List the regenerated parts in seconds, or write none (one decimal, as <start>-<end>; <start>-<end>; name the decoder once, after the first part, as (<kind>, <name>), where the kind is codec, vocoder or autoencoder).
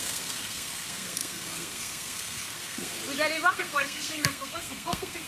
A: 0.0-3.0 (codec, SNAC); 3.5-5.3